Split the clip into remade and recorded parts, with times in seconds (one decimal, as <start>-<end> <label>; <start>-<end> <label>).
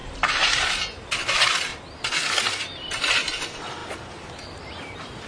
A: 0.0-1.1 recorded; 1.1-1.7 remade; 1.7-2.6 recorded; 2.6-3.8 remade; 3.8-5.3 recorded